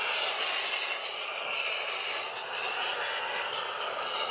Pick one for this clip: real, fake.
real